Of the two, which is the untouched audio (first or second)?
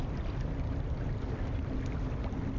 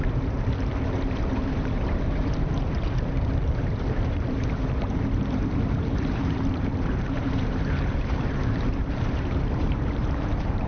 first